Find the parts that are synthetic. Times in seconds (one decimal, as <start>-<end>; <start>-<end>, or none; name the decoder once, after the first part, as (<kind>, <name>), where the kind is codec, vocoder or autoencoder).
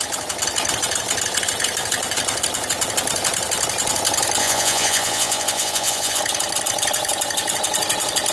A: 4.4-6.2 (vocoder, Vocos)